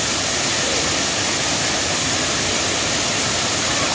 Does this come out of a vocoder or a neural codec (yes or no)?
no